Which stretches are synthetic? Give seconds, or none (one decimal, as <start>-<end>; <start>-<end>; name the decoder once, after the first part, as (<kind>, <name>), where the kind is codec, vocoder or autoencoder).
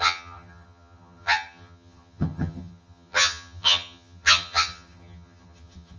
0.0-6.0 (vocoder, HiFi-GAN)